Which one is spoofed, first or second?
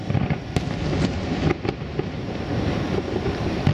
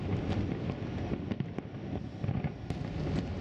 first